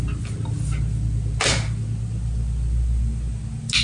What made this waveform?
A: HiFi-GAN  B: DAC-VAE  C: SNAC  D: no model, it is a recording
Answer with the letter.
D